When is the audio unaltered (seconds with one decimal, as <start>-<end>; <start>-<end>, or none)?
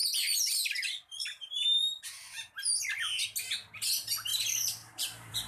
0.7-1.1; 2.0-4.3